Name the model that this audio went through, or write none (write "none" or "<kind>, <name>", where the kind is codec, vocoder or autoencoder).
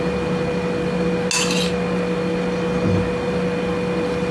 none